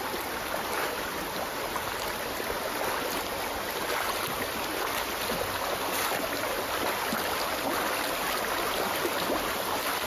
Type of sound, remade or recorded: recorded